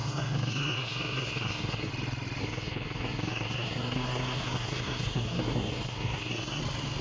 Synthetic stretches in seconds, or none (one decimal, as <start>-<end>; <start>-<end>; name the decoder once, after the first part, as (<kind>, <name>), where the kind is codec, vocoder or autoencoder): 0.0-1.9 (codec, SNAC); 2.4-6.6